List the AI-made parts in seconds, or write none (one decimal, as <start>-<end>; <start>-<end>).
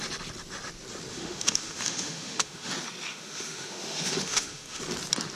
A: 1.1-2.7; 3.1-4.8